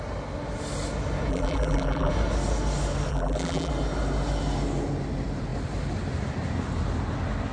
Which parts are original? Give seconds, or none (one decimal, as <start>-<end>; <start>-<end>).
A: 0.0-1.3; 2.1-3.1; 3.7-7.5